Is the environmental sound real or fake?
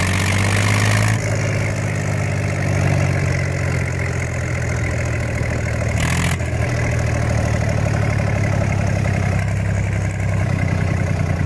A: real